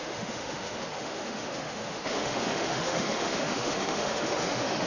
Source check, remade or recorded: remade